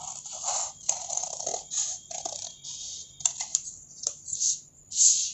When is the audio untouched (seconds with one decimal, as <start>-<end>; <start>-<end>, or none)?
0.0-1.0; 2.4-3.5; 4.6-5.3